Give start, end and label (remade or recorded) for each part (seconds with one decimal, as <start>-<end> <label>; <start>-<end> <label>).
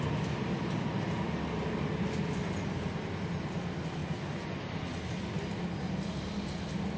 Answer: 0.0-7.0 recorded